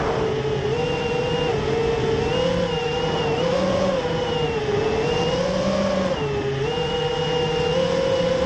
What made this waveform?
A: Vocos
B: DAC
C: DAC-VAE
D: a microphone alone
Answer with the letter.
D